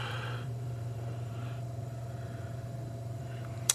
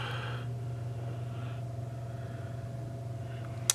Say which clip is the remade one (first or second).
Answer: first